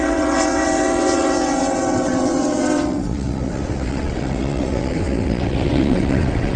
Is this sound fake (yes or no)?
yes